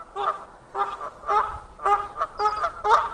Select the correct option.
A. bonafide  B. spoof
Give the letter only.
A